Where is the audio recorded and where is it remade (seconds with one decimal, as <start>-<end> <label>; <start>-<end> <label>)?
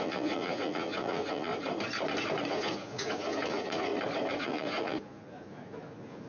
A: 0.0-1.5 remade; 1.5-2.5 recorded; 2.5-3.9 remade; 3.9-4.4 recorded; 4.4-6.3 remade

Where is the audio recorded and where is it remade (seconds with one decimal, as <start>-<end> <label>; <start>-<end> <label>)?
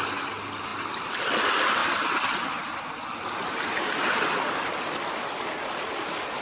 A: 0.0-6.4 recorded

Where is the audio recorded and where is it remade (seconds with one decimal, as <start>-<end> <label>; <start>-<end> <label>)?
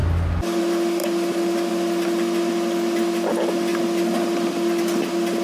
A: 0.0-5.4 recorded